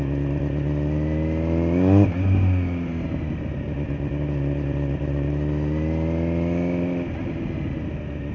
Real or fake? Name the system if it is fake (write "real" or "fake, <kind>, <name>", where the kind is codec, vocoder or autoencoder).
real